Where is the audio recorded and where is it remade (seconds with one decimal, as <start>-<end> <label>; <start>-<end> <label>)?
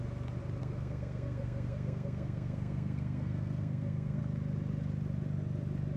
0.0-0.6 recorded; 0.6-4.2 remade; 4.2-6.0 recorded